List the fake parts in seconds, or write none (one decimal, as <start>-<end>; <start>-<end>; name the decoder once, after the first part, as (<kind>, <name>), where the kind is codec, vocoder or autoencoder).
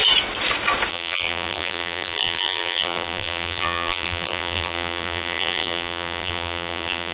0.9-7.1 (vocoder, BigVGAN v2)